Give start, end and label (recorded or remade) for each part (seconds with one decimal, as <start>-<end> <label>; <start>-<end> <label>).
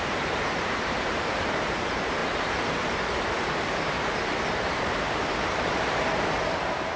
0.0-2.2 remade; 2.2-3.9 recorded; 3.9-7.0 remade